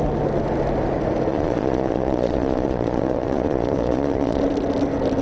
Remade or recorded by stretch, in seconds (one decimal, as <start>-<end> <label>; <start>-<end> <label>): 0.0-1.3 recorded; 1.3-4.4 remade; 4.4-5.2 recorded